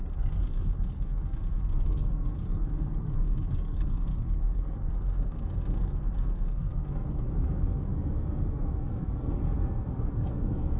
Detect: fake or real fake